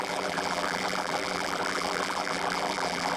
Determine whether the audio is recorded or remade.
remade